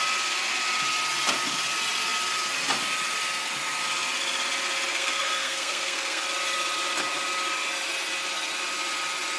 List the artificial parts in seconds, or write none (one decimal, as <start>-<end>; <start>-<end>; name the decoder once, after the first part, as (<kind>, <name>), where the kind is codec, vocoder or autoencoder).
4.9-6.2 (codec, SNAC)